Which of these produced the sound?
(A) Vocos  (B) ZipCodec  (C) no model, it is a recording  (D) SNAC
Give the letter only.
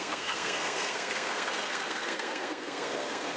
D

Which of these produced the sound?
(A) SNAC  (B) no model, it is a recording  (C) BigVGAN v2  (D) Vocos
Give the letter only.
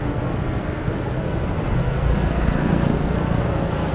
A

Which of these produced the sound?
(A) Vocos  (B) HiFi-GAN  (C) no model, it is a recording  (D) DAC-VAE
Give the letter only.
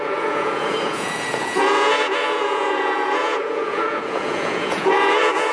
A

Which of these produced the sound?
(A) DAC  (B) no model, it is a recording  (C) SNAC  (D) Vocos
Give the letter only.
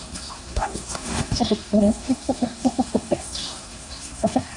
C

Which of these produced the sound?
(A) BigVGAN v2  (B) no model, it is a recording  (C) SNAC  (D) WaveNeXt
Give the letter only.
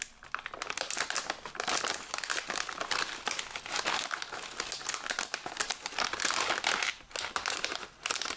B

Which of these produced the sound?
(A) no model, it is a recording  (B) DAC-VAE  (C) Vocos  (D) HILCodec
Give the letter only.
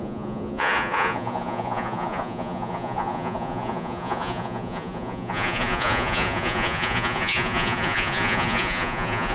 C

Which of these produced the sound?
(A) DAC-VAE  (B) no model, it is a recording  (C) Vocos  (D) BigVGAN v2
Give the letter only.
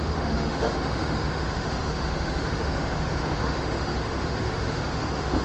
A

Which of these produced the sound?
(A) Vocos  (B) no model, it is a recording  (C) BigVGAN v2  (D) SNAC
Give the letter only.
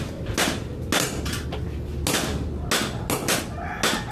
B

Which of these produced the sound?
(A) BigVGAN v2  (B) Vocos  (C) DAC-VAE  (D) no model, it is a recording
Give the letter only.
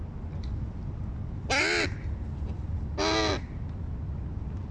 D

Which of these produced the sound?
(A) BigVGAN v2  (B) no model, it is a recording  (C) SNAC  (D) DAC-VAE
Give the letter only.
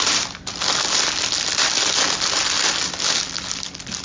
B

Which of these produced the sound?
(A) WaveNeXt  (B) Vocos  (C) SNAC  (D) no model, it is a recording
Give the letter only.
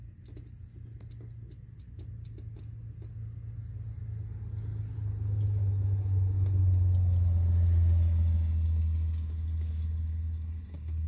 D